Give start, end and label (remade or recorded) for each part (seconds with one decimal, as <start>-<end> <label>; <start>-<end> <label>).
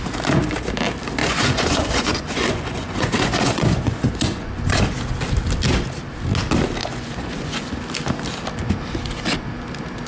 0.0-1.2 recorded; 1.2-4.8 remade; 4.8-6.8 recorded; 6.8-7.7 remade; 7.7-10.1 recorded